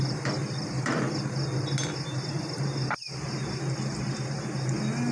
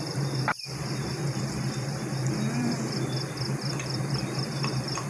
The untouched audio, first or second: first